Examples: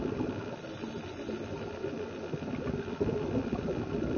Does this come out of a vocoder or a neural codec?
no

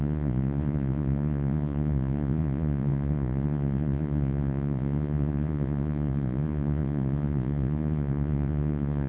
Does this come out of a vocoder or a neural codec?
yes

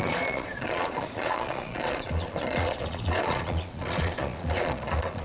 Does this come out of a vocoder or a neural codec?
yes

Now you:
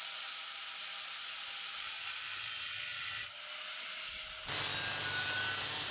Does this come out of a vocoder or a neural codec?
no